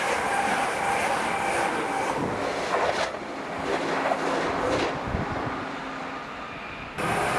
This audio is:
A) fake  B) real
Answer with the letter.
B